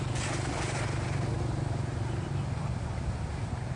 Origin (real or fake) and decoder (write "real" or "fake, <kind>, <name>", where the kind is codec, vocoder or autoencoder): real